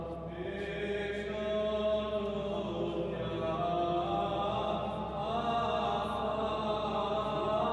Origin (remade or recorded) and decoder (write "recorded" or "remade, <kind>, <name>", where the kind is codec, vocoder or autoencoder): recorded